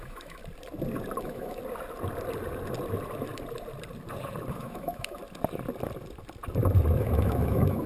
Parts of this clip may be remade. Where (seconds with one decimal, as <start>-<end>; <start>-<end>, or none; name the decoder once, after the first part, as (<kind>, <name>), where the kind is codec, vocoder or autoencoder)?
0.0-0.4 (autoencoder, DAC-VAE); 1.2-1.6; 4.5-5.2; 7.0-7.9